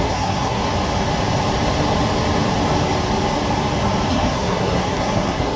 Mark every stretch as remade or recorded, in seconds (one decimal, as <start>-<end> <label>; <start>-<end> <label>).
0.0-0.7 remade; 0.7-4.1 recorded; 4.1-5.6 remade